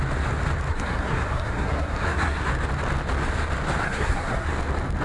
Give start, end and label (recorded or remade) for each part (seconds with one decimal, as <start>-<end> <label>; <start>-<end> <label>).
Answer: 0.0-0.7 recorded; 0.7-2.5 remade; 2.5-3.8 recorded; 3.8-4.5 remade; 4.5-5.0 recorded